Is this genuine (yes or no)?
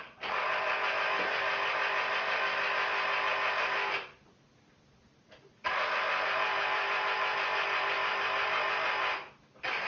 yes